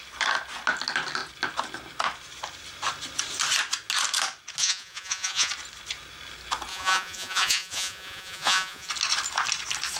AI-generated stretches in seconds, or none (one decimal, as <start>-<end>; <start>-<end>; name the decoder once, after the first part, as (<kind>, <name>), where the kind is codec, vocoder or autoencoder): 4.6-5.5 (vocoder, Vocos); 6.7-8.9